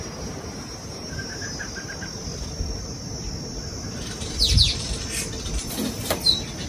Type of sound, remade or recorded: recorded